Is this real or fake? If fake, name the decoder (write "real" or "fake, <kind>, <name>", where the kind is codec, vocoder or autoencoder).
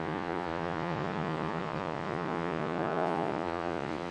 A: fake, vocoder, Vocos